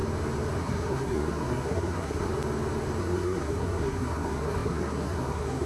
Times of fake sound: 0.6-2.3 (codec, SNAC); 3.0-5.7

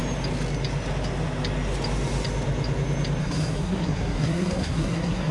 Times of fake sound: 3.2-5.3 (codec, SNAC)

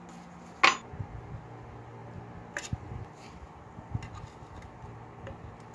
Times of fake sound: none

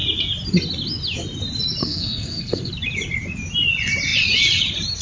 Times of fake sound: 1.8-2.7 (codec, SNAC)